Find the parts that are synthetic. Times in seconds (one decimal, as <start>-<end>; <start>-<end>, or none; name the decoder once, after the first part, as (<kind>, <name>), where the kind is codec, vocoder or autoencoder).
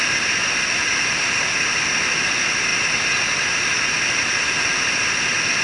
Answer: none